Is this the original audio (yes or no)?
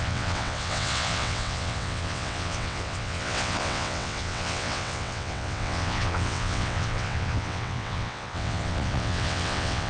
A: no